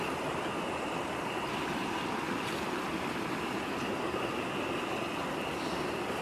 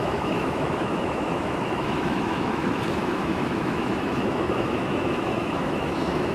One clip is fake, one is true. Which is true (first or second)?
first